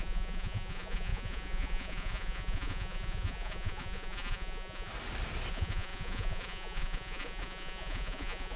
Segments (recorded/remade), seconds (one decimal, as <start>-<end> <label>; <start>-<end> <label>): 0.0-4.9 remade; 4.9-5.5 recorded; 5.5-8.6 remade